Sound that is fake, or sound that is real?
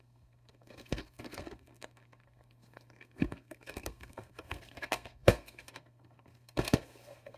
fake